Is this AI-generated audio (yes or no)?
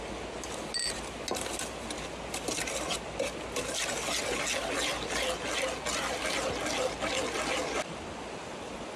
no